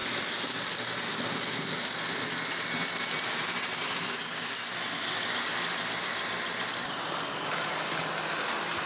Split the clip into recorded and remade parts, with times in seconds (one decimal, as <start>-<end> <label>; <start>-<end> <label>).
0.0-8.9 recorded